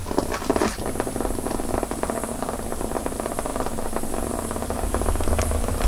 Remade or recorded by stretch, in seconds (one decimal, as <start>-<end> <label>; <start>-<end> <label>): 0.0-5.9 recorded